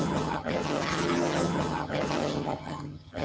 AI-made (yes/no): yes